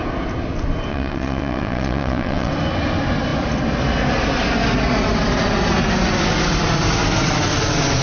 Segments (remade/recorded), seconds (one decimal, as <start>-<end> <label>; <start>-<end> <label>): 0.0-0.9 recorded; 0.9-2.5 remade; 2.5-8.0 recorded